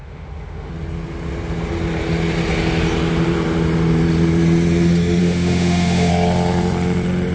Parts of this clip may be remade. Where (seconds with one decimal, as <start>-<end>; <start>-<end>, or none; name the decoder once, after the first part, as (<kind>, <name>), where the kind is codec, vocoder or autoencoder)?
0.0-0.7 (autoencoder, DAC-VAE); 5.2-6.1